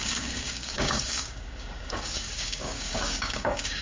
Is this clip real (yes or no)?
no